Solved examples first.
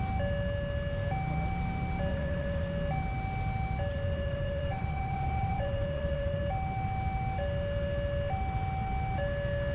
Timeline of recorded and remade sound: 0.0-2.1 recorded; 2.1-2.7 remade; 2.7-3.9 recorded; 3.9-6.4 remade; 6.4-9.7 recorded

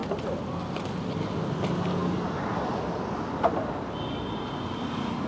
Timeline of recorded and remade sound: 0.0-5.3 recorded